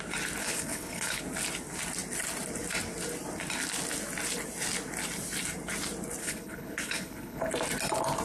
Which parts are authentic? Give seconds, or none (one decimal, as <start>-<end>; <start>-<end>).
0.0-0.4; 1.2-6.2; 7.5-8.2